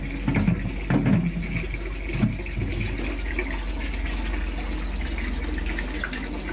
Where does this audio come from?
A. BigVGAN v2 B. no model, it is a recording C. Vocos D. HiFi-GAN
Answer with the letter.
B